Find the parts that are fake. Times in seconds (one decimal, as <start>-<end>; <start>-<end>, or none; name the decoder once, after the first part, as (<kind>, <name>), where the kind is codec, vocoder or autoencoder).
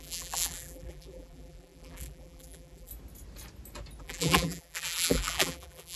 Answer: 0.0-2.9 (vocoder, BigVGAN v2); 4.0-6.0